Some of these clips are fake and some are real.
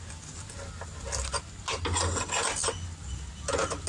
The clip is real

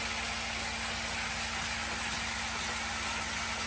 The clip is real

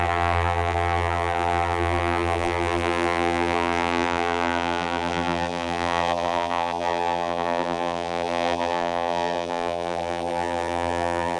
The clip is fake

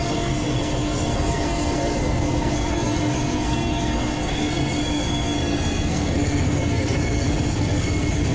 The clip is fake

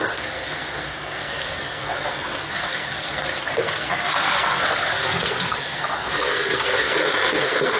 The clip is fake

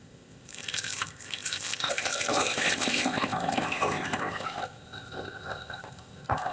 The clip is fake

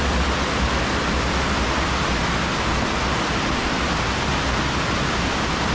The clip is real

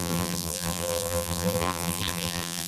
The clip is fake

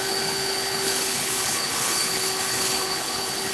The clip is fake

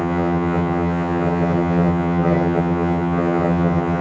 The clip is fake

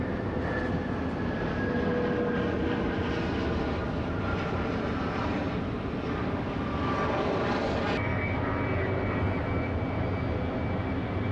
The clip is real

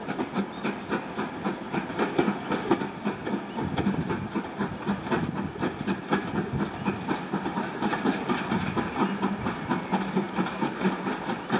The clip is real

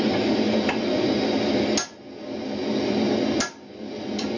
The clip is real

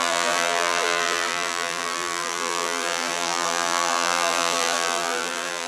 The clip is fake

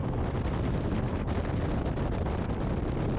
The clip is real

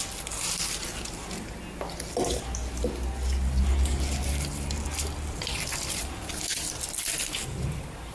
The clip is real